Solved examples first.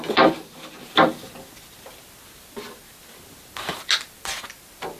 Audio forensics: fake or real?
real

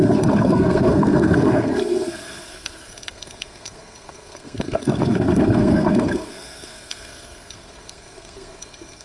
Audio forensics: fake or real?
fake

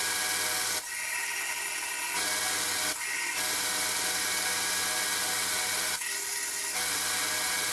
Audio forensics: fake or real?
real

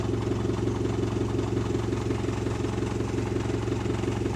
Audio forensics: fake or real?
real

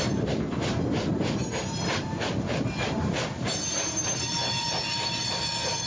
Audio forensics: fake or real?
real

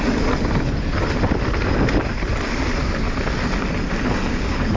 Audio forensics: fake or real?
real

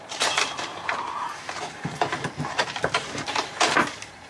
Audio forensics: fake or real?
fake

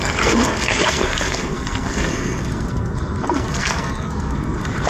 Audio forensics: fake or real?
fake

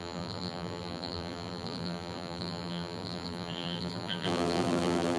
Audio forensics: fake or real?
fake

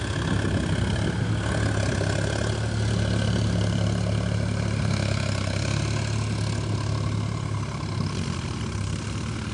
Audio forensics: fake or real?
real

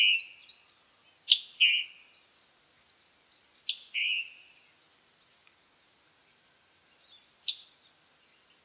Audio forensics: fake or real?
real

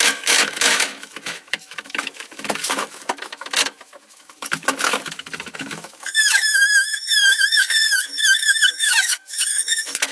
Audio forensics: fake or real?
fake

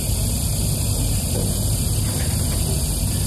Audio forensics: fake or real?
real